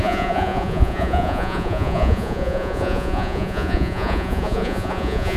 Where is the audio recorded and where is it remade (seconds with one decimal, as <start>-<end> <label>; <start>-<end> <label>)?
0.0-5.4 remade

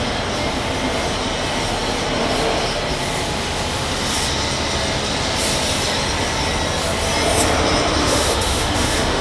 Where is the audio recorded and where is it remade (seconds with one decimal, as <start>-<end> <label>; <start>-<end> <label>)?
0.0-8.0 recorded; 8.0-9.2 remade

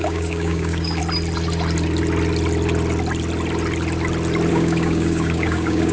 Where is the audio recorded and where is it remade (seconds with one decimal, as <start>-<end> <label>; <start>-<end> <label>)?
0.0-1.0 remade; 1.0-4.5 recorded; 4.5-5.9 remade